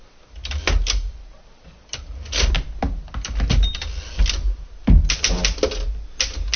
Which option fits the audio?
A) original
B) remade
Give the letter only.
A